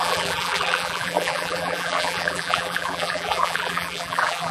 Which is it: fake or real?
fake